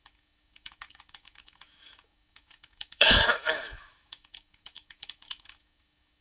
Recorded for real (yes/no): no